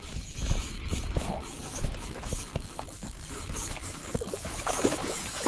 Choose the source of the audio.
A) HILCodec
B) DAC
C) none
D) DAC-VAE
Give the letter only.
D